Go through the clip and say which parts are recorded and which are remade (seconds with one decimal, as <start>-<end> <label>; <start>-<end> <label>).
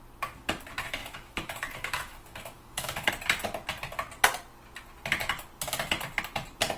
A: 0.0-1.0 recorded; 1.0-3.1 remade; 3.1-6.8 recorded